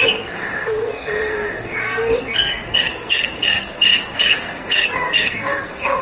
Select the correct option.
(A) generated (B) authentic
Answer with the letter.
A